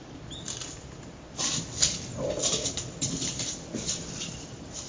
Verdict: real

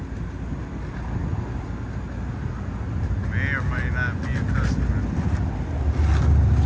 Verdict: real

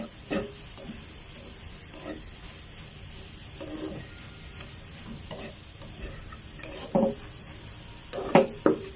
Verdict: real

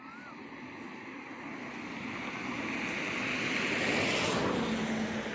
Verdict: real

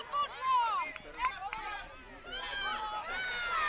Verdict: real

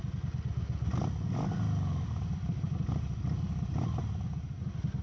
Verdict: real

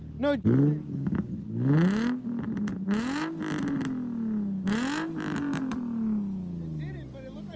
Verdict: real